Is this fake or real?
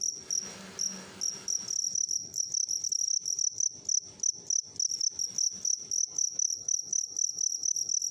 real